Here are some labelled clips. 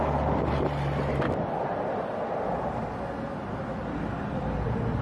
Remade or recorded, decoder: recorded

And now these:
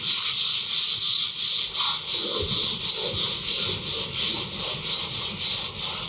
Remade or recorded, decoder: recorded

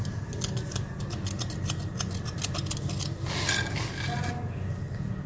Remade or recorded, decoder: recorded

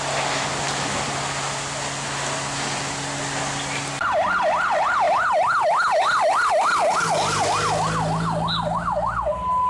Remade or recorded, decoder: recorded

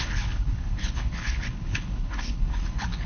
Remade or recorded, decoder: remade, codec, HILCodec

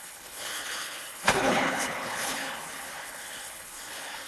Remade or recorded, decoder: remade, codec, HILCodec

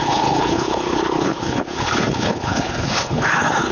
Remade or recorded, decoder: remade, codec, HILCodec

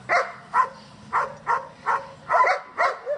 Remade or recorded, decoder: recorded